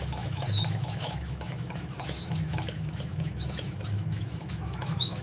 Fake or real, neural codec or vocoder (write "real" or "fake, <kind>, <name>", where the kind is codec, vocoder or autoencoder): fake, autoencoder, DAC-VAE